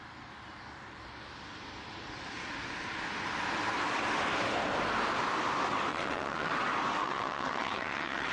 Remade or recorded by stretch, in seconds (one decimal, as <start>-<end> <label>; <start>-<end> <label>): 0.0-5.9 recorded; 5.9-6.5 remade; 6.5-7.0 recorded; 7.0-8.3 remade